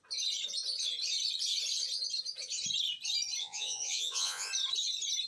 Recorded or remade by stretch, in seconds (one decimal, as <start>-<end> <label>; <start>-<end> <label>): 0.0-3.4 recorded; 3.4-4.5 remade; 4.5-5.3 recorded